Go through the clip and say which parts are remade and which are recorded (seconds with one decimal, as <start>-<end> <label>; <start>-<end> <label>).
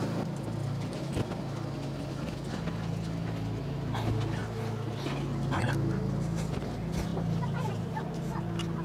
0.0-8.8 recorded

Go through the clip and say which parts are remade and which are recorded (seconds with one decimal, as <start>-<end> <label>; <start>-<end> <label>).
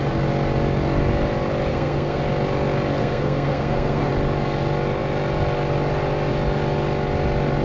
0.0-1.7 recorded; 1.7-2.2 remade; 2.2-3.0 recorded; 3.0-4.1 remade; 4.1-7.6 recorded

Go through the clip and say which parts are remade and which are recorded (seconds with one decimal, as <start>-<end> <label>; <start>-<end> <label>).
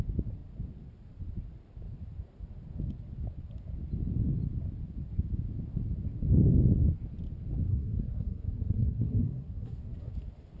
0.0-7.7 recorded; 7.7-10.1 remade; 10.1-10.6 recorded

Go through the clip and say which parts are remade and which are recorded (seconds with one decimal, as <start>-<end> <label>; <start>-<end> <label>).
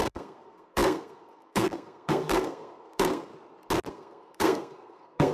0.0-3.3 remade; 3.3-3.9 recorded; 3.9-5.3 remade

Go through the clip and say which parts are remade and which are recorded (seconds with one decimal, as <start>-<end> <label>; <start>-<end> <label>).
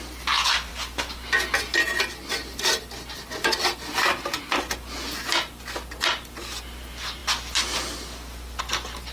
0.0-9.1 recorded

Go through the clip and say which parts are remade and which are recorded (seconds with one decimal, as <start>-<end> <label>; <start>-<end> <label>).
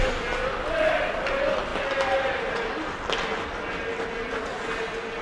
0.0-5.2 recorded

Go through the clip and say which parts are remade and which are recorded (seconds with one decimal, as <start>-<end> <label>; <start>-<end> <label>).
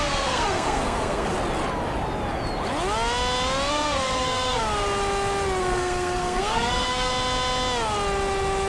0.0-1.3 remade; 1.3-3.7 recorded; 3.7-4.6 remade; 4.6-5.6 recorded; 5.6-7.1 remade; 7.1-8.7 recorded